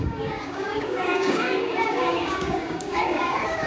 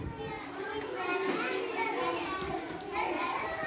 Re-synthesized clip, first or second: first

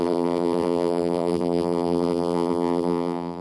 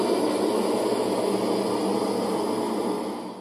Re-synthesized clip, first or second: first